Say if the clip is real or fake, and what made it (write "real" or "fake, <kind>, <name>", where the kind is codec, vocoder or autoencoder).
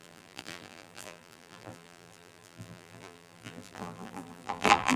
fake, vocoder, BigVGAN v2